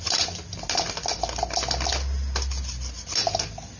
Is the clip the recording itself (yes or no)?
yes